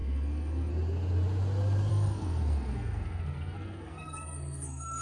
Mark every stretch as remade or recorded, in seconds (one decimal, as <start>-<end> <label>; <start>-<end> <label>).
0.0-0.7 remade; 0.7-1.9 recorded; 1.9-5.0 remade